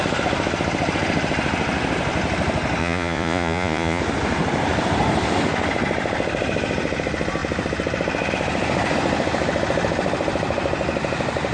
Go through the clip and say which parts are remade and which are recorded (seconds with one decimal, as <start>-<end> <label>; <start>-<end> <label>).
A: 0.0-2.8 recorded; 2.8-4.0 remade; 4.0-11.5 recorded